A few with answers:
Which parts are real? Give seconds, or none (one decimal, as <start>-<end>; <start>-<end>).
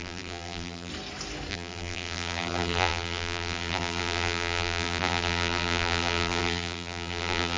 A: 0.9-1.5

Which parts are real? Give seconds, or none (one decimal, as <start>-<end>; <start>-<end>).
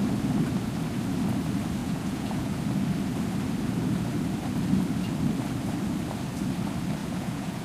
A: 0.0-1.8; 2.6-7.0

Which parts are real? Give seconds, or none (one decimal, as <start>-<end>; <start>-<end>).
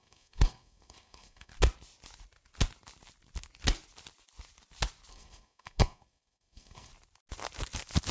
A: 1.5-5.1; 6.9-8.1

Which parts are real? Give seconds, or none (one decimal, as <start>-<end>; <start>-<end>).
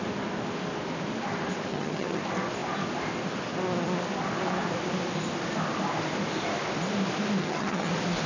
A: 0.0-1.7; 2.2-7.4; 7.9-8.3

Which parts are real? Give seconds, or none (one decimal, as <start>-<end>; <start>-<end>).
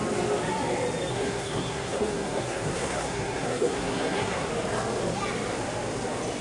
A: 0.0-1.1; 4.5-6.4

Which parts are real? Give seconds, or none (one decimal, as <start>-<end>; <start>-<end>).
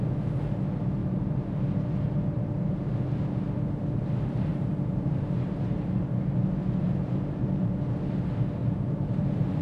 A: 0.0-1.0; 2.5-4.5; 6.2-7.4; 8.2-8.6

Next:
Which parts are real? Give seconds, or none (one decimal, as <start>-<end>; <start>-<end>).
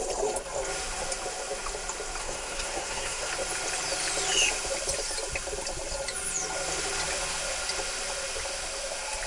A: 0.0-2.2; 3.3-9.3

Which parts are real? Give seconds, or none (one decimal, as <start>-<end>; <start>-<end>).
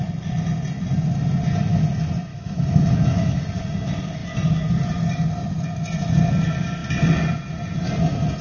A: 0.0-2.3; 3.4-8.4